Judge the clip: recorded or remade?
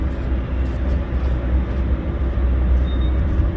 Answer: recorded